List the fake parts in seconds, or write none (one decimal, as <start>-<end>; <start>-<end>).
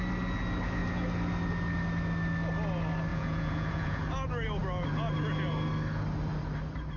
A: 3.1-4.0